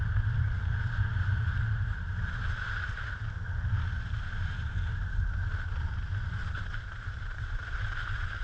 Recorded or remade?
recorded